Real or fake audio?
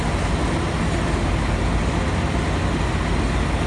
real